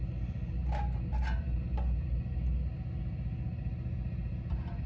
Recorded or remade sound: recorded